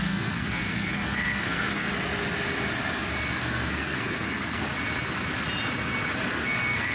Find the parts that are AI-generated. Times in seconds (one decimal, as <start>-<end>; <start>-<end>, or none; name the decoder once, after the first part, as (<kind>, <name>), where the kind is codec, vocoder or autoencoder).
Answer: 0.0-1.9 (codec, SNAC); 3.4-4.6; 6.3-6.9